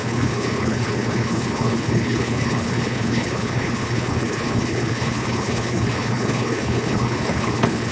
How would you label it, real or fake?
fake